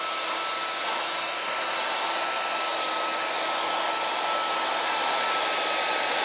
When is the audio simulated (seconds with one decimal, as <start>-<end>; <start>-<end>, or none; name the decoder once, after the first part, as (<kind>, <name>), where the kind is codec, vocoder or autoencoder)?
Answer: none